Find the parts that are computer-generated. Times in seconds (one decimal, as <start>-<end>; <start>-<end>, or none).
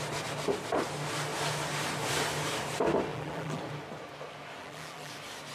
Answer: 3.1-3.6; 4.6-5.1